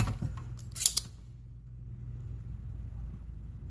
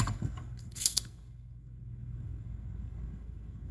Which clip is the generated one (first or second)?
second